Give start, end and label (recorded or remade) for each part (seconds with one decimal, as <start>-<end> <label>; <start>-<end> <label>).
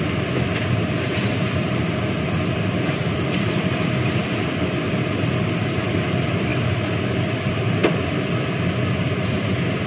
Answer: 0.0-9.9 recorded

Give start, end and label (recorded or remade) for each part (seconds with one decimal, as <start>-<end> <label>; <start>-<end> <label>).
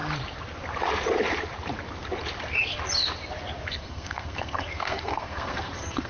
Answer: 0.0-3.7 recorded; 3.7-6.1 remade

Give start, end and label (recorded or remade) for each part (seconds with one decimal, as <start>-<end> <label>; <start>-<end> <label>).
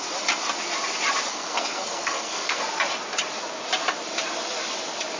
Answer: 0.0-1.3 recorded; 1.3-2.6 remade; 2.6-5.2 recorded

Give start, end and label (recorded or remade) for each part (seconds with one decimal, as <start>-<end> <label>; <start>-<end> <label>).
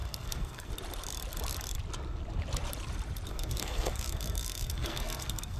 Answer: 0.0-0.7 remade; 0.7-3.3 recorded; 3.3-5.6 remade